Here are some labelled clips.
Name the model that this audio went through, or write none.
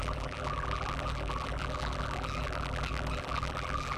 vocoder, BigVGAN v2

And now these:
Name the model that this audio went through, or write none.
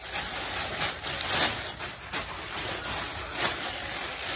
none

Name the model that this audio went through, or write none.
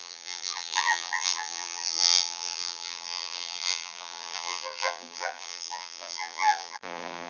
vocoder, BigVGAN v2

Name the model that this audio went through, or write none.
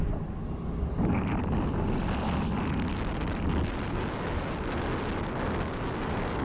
none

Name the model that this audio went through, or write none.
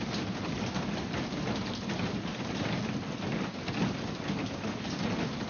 none